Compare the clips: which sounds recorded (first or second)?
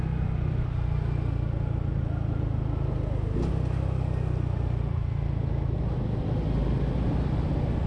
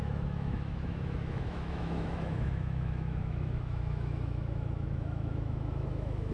first